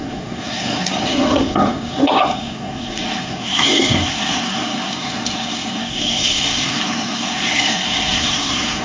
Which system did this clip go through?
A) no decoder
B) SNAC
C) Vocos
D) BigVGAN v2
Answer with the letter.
B